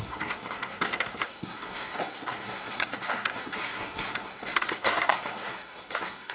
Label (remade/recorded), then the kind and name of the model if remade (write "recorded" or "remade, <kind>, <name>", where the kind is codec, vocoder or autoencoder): remade, codec, SNAC